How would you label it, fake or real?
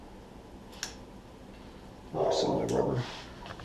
real